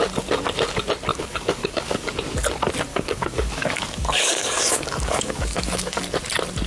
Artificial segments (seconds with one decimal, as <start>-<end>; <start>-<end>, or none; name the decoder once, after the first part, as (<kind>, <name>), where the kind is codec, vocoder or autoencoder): 1.1-2.1 (codec, DAC); 2.9-6.0